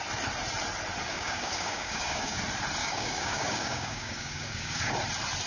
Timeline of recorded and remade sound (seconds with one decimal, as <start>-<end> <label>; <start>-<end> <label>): 0.0-1.1 recorded; 1.1-2.4 remade; 2.4-2.8 recorded; 2.8-4.9 remade; 4.9-5.5 recorded

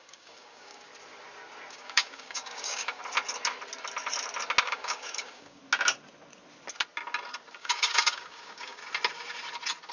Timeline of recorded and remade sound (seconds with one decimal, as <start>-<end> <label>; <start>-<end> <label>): 0.0-0.9 remade; 0.9-1.7 recorded; 1.7-3.0 remade; 3.0-4.6 recorded; 4.6-5.6 remade; 5.6-7.5 recorded; 7.5-8.8 remade; 8.8-9.9 recorded

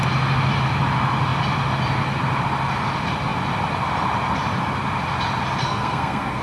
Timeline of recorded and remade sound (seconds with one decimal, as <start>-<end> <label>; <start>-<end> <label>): 0.0-5.6 recorded; 5.6-6.4 remade

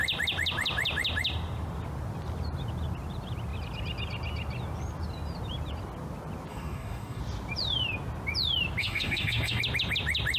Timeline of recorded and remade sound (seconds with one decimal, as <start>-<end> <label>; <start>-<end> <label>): 0.0-6.5 recorded; 6.5-7.2 remade; 7.2-8.8 recorded; 8.8-9.6 remade; 9.6-10.4 recorded

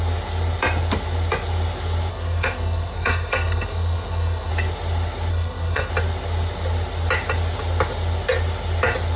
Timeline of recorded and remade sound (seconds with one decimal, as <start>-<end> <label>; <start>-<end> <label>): 0.0-2.1 recorded; 2.1-4.5 remade; 4.5-5.3 recorded; 5.3-5.9 remade; 5.9-9.2 recorded

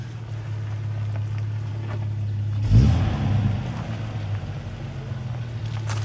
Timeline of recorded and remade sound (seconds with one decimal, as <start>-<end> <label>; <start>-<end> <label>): 0.0-6.0 recorded

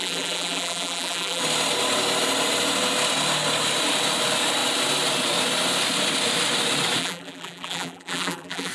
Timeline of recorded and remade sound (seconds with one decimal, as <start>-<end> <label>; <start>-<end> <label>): 0.0-1.4 remade; 1.4-7.0 recorded; 7.0-8.7 remade

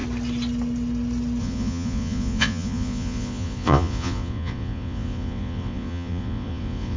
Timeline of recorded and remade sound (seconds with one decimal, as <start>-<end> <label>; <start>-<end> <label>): 0.0-1.4 recorded; 1.4-7.0 remade